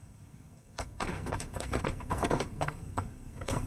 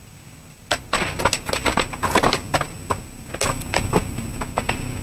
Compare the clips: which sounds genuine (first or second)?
second